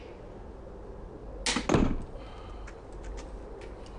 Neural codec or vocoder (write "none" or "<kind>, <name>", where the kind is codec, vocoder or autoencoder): none